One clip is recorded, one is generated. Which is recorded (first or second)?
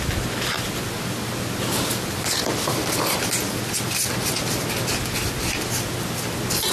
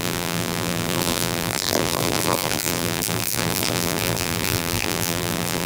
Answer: first